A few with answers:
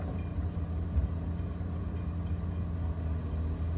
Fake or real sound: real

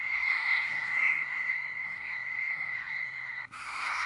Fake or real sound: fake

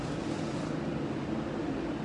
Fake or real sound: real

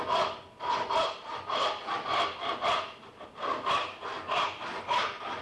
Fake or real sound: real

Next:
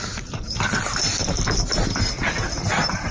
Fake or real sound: real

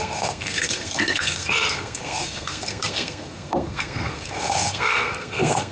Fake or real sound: fake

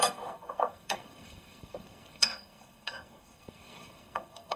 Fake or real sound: fake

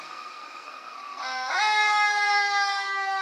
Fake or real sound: fake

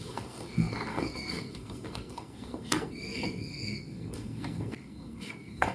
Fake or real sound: fake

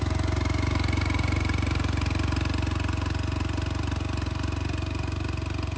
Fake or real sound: real